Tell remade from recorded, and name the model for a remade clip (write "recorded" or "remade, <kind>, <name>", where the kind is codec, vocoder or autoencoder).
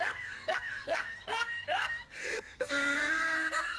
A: remade, codec, SNAC